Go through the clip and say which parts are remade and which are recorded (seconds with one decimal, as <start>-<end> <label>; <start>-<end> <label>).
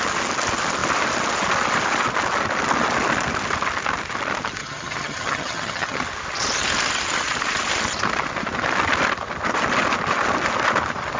0.0-4.6 recorded; 4.6-6.0 remade; 6.0-11.2 recorded